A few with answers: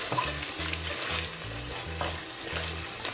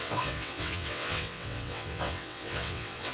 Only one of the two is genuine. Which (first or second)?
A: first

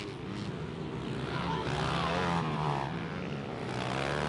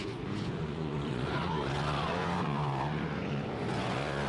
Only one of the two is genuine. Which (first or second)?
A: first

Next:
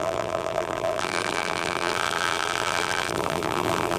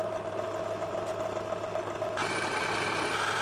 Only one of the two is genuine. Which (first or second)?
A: second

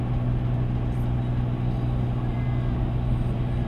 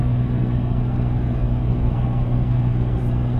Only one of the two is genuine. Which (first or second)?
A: first